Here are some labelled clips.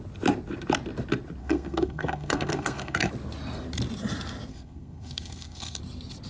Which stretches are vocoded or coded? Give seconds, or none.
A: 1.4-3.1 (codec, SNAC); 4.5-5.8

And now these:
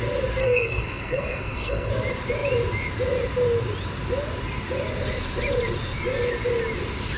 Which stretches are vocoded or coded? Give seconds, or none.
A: 0.4-1.9 (codec, SNAC)

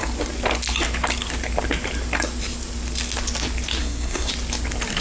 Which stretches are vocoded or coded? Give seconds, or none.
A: 3.8-4.3 (codec, SNAC)

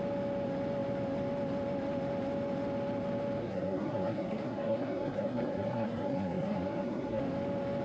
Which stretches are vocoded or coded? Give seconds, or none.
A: 3.4-7.2 (codec, SNAC)

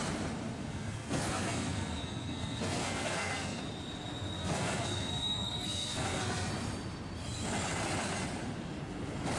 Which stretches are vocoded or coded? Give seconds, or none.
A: 0.6-3.6 (codec, SNAC); 4.4-6.5

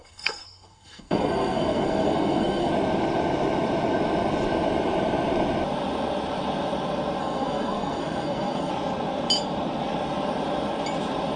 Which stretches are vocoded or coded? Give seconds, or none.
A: 0.0-2.7 (codec, SNAC); 7.2-8.7

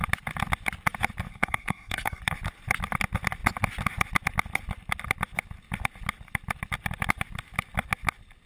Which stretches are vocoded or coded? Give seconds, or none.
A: 1.3-2.2 (codec, SNAC)